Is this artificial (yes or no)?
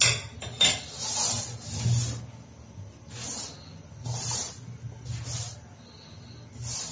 no